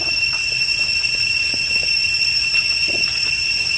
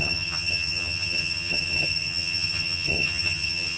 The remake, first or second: second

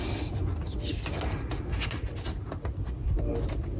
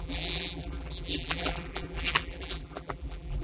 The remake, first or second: second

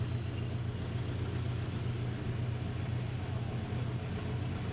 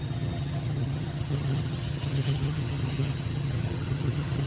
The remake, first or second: second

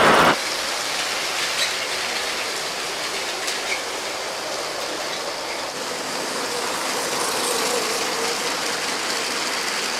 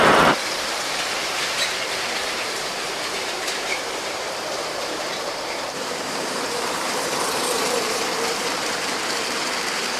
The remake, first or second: second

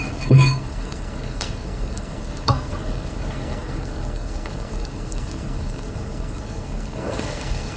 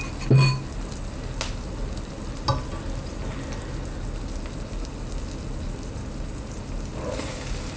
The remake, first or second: first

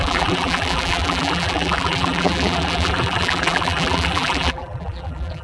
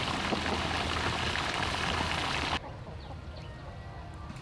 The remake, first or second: first